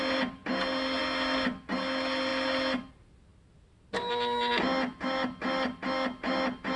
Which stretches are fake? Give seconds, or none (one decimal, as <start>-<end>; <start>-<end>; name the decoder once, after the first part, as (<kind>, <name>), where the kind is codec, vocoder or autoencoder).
none